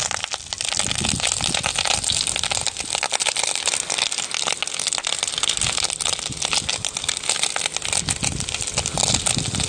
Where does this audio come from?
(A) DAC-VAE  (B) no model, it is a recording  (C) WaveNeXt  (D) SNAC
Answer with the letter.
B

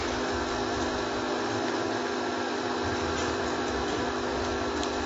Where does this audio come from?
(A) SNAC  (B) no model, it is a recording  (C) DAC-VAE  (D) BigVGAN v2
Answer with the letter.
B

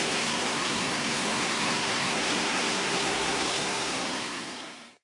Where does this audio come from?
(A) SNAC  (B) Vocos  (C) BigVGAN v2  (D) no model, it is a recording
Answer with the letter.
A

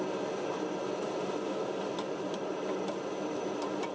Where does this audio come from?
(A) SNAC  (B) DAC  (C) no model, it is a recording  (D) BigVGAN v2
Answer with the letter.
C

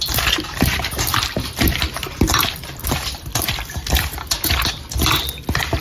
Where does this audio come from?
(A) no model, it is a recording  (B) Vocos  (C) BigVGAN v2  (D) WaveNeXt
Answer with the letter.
C